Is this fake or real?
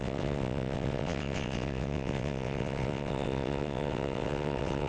fake